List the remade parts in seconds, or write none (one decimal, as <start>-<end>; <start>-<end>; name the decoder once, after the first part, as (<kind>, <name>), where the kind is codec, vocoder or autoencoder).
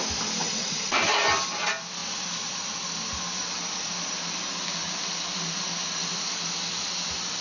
0.4-1.0 (vocoder, WaveNeXt)